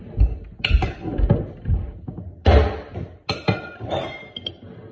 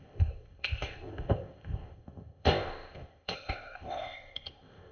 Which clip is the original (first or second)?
first